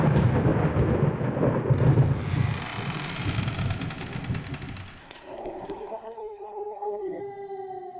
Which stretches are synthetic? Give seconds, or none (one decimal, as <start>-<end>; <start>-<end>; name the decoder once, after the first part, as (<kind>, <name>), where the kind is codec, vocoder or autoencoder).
5.0-7.2 (codec, SNAC)

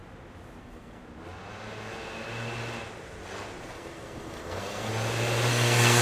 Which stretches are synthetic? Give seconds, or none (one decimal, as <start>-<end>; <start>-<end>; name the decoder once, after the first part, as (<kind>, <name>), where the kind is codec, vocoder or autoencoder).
0.6-1.0 (codec, SNAC); 3.6-4.9; 5.5-6.0

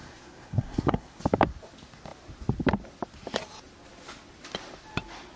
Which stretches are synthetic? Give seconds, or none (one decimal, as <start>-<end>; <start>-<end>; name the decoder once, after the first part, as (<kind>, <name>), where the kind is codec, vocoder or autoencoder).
0.0-1.2 (codec, SNAC)

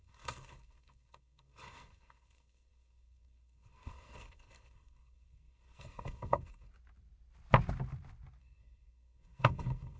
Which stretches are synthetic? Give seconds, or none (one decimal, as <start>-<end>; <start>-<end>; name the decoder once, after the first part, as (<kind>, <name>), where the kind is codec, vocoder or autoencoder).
0.0-6.7 (codec, SNAC); 8.4-10.0

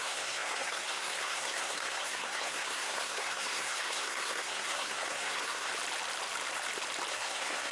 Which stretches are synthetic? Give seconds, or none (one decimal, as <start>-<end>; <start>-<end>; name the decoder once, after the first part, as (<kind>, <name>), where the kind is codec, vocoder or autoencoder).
0.0-5.7 (codec, SNAC); 7.1-7.7

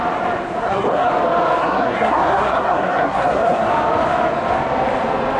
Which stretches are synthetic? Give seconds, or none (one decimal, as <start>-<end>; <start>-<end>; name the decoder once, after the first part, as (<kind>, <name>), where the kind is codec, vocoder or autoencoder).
0.6-1.1 (codec, SNAC); 1.6-3.7